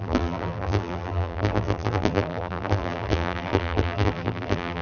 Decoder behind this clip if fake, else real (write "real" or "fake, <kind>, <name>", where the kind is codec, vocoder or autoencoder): fake, vocoder, BigVGAN v2